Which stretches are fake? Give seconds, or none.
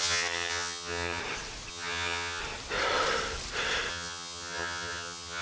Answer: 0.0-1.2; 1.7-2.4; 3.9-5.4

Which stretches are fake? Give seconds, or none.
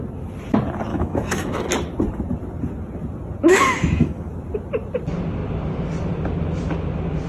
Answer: 0.9-1.7; 3.5-4.3